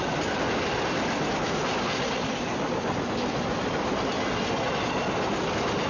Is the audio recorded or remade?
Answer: recorded